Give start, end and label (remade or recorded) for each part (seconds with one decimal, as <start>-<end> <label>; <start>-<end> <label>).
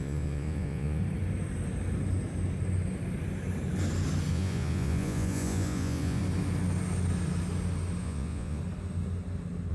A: 0.0-1.0 remade; 1.0-4.3 recorded; 4.3-6.2 remade; 6.2-8.0 recorded; 8.0-8.6 remade; 8.6-9.7 recorded